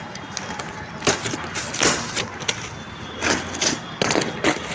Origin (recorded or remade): recorded